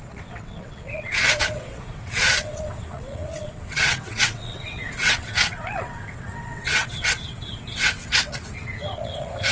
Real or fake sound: fake